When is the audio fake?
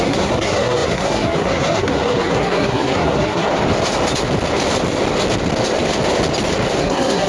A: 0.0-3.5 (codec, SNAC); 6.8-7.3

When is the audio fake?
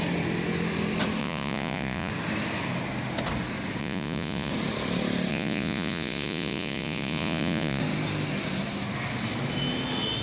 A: 1.2-2.1 (vocoder, Vocos); 3.8-4.5; 5.3-7.8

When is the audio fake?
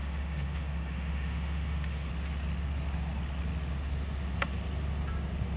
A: 0.0-2.1 (autoencoder, DAC-VAE)